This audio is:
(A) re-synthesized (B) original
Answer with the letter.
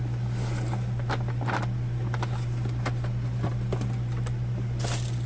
B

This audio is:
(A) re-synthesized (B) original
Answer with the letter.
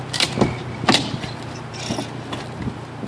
B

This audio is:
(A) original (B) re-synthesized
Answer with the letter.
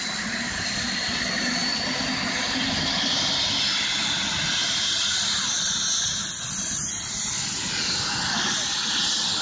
A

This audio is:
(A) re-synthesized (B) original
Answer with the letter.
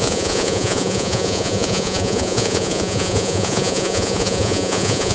A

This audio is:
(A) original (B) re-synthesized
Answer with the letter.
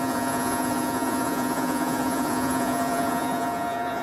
B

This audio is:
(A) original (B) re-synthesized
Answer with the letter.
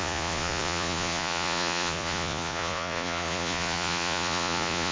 B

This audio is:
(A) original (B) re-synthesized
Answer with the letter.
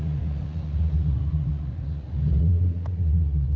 B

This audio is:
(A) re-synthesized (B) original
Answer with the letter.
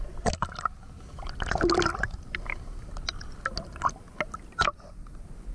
B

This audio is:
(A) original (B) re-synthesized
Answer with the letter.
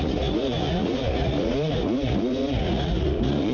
B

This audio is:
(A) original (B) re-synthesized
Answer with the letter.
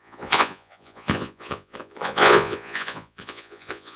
B